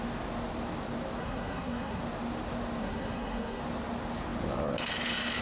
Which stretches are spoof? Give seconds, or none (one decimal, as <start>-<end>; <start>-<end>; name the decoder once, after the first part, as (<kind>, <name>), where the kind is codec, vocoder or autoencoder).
1.2-2.0 (codec, SNAC); 2.8-3.6